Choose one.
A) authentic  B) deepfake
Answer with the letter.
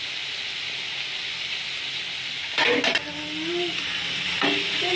A